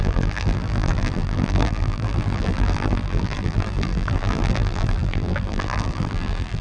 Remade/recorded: remade